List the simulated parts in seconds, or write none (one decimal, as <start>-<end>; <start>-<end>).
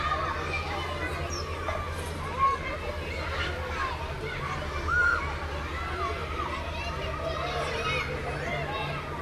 3.8-4.9; 6.2-7.9